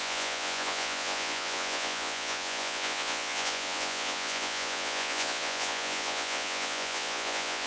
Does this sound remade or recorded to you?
remade